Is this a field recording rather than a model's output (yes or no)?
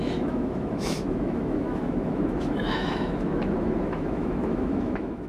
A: no